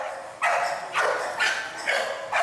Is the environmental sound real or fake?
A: real